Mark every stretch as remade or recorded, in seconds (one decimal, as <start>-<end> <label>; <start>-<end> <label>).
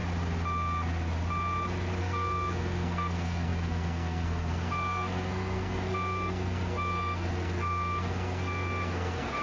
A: 0.0-2.0 recorded; 2.0-9.4 remade